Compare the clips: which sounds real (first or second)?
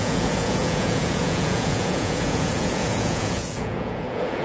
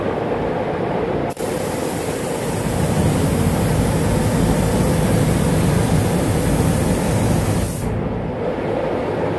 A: second